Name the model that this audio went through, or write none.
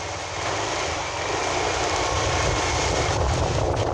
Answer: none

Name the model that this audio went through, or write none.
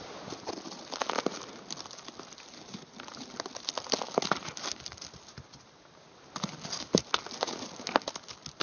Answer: none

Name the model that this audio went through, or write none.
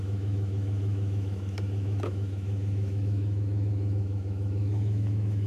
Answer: autoencoder, DAC-VAE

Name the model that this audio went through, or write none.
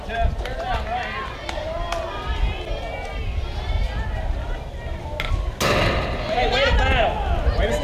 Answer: none